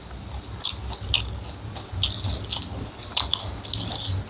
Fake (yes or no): no